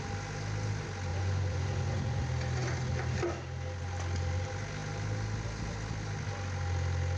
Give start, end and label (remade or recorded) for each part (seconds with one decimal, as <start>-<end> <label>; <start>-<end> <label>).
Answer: 0.0-1.1 recorded; 1.1-2.2 remade; 2.2-7.2 recorded